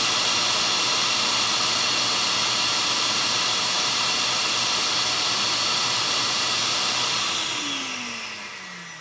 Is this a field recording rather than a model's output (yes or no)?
yes